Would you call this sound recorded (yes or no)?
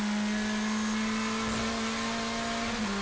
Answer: yes